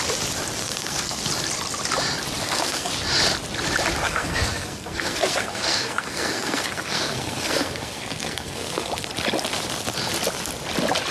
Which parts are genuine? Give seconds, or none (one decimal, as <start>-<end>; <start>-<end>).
0.0-0.6; 1.2-2.4; 2.9-4.0; 8.9-11.1